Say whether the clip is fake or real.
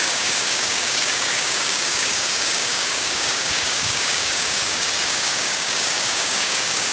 fake